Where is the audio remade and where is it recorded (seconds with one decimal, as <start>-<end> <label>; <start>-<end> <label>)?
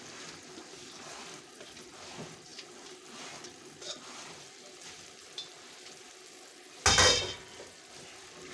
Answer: 0.0-8.5 recorded